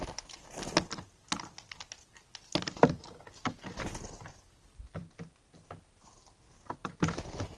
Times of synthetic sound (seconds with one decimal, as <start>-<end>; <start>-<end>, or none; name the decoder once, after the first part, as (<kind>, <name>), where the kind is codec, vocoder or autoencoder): none